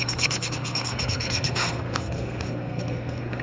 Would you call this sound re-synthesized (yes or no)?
yes